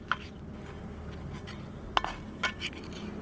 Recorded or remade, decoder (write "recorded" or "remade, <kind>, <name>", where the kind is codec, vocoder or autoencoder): recorded